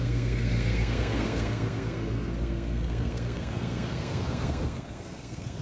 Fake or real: fake